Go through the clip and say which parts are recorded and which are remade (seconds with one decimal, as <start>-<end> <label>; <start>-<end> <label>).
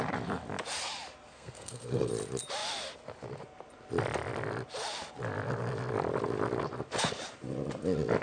0.0-1.3 recorded; 1.3-2.1 remade; 2.1-8.2 recorded